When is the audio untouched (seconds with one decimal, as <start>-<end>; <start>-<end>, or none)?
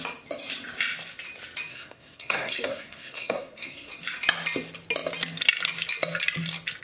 0.0-1.7; 3.9-6.8